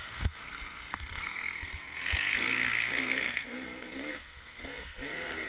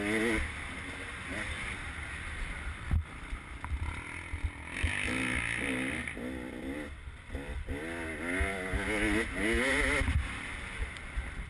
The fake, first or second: first